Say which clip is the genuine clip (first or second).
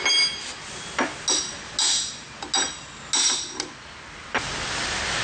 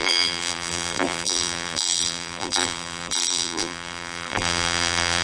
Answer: first